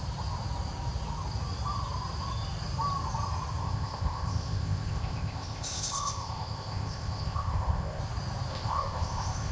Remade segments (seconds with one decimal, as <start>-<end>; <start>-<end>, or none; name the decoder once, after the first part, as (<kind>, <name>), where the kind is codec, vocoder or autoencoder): 3.6-8.0 (codec, ZipCodec); 8.5-9.5